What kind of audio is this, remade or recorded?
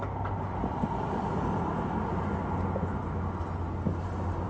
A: recorded